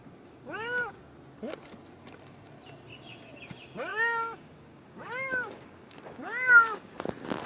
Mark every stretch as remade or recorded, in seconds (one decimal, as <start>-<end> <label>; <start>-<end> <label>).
0.0-1.0 remade; 1.0-3.9 recorded; 3.9-7.0 remade; 7.0-7.5 recorded